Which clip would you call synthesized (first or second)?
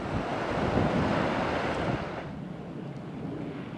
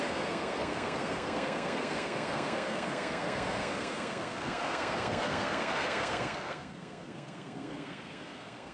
second